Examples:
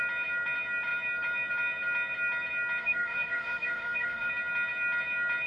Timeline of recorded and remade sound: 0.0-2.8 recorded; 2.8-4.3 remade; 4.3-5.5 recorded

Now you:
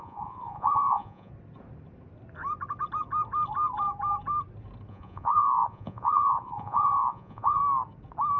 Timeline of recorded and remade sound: 0.0-1.3 remade; 1.3-4.9 recorded; 4.9-7.6 remade; 7.6-8.4 recorded

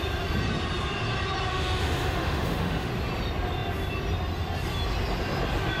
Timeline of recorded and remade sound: 0.0-1.5 recorded; 1.5-2.9 remade; 2.9-5.8 recorded

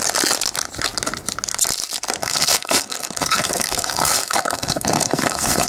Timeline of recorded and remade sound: 0.0-2.2 recorded; 2.2-5.7 remade

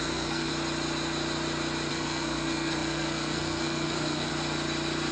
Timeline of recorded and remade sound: 0.0-0.5 remade; 0.5-1.9 recorded; 1.9-4.3 remade; 4.3-5.1 recorded

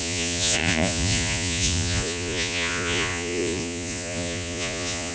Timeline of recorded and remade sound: 0.0-5.1 remade

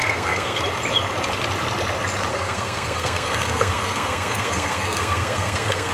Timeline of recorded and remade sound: 0.0-0.6 remade; 0.6-2.3 recorded; 2.3-5.9 remade

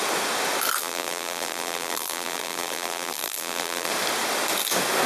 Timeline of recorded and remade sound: 0.0-0.8 recorded; 0.8-3.9 remade; 3.9-5.1 recorded